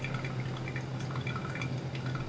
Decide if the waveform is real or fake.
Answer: real